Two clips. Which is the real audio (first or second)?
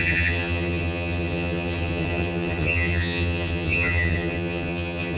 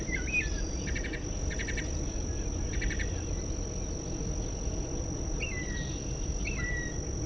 second